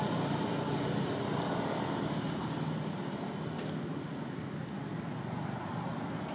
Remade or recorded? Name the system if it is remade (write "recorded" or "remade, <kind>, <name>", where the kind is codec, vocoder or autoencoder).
recorded